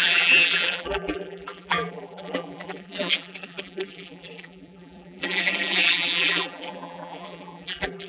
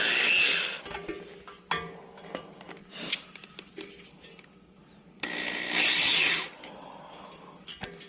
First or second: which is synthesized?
first